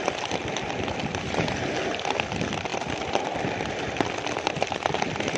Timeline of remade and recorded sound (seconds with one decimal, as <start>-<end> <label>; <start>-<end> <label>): 0.0-5.4 recorded